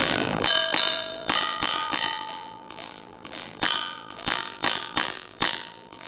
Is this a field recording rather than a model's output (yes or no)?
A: no